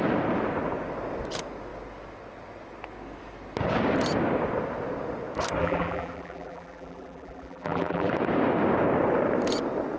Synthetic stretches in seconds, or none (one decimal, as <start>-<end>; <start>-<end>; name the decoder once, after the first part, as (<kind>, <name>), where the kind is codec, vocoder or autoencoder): 5.6-8.1 (vocoder, BigVGAN v2)